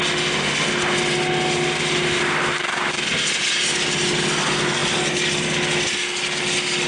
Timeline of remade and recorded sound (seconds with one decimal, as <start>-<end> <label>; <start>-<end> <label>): 0.0-6.9 recorded